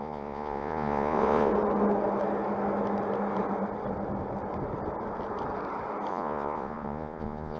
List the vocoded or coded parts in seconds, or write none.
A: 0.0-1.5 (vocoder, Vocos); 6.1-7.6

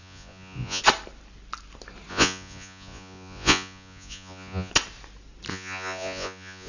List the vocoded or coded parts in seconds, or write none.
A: 0.0-0.8 (vocoder, Vocos); 2.1-4.7; 5.5-6.7

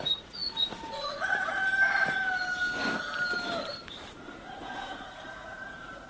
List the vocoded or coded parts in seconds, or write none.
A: 0.0-1.6 (vocoder, Vocos); 4.3-6.1

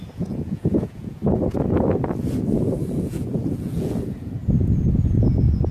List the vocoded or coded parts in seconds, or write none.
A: 0.0-1.2 (vocoder, Vocos); 2.9-5.7

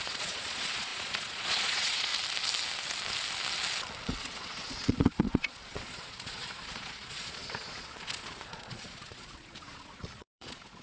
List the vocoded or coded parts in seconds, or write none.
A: 0.0-2.1 (vocoder, Vocos); 4.2-10.8

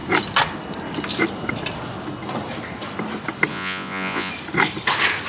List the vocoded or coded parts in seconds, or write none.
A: 3.5-4.3 (vocoder, Vocos)